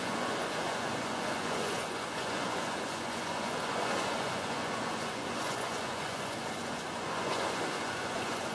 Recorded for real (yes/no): no